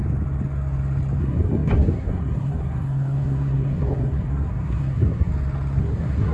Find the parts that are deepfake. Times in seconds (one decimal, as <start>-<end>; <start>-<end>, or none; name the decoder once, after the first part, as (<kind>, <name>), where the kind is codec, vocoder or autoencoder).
1.2-5.3 (codec, SNAC); 5.8-6.3